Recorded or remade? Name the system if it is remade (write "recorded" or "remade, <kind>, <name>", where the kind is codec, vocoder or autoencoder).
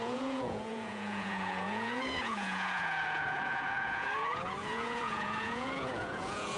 remade, vocoder, Vocos